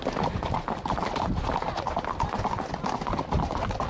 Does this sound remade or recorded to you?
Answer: recorded